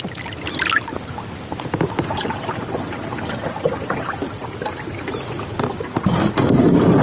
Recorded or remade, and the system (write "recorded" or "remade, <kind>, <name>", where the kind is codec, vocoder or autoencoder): recorded